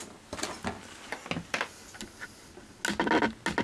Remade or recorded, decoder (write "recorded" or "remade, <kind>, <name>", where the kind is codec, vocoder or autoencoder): recorded